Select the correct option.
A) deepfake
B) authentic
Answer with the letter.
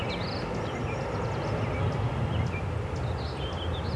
B